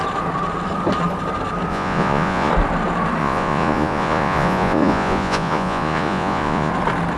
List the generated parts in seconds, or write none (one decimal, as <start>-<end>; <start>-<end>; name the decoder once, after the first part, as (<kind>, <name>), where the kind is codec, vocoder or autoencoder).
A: 1.7-2.5 (vocoder, Vocos); 3.2-6.7

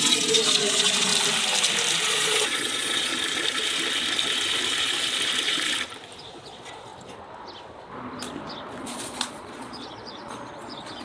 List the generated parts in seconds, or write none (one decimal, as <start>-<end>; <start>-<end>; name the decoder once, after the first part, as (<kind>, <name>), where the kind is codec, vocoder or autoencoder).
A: 0.0-1.1 (vocoder, Vocos); 2.0-3.1; 6.2-6.9; 8.8-11.0

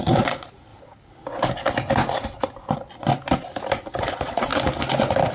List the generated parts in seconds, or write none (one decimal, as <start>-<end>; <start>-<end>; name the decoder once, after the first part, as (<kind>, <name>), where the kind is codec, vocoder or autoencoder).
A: 0.0-0.7 (vocoder, Vocos); 2.7-3.1; 4.0-4.5

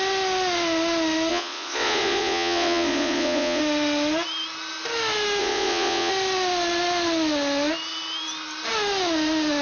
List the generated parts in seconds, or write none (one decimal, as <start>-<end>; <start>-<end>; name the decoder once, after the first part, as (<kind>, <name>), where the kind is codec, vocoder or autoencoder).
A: 1.3-3.6 (vocoder, Vocos); 5.4-6.1

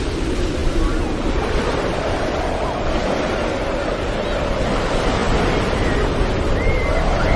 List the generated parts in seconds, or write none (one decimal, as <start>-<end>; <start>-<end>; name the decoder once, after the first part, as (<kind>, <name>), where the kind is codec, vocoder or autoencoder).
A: none

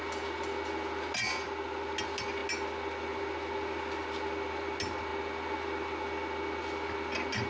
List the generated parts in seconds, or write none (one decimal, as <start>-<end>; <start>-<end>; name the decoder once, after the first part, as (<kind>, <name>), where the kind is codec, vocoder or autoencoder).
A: none

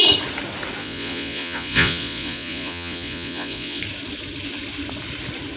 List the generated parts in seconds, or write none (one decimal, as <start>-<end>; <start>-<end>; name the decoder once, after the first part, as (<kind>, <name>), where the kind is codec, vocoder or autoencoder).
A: 0.8-3.8 (vocoder, Vocos)